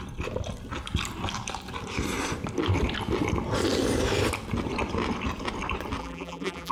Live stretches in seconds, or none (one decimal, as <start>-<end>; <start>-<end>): 0.0-6.0